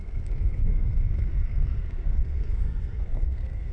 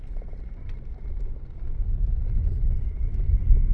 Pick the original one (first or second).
second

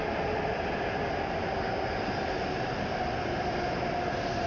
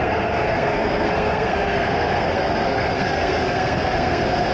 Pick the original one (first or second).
first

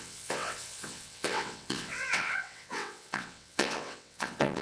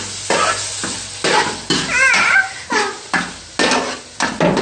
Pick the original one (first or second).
second